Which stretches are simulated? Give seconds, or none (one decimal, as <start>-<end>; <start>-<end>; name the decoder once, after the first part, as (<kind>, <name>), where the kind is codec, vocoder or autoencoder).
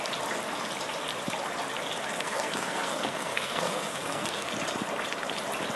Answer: 2.0-4.5 (codec, SNAC)